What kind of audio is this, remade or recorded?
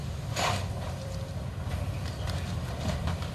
remade